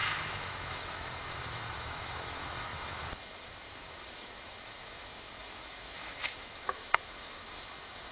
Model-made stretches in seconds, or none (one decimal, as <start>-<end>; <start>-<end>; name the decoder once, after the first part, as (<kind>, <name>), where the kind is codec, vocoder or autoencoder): 0.0-8.1 (autoencoder, DAC-VAE)